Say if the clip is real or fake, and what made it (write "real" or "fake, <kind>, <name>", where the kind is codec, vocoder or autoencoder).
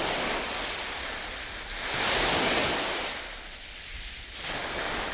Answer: real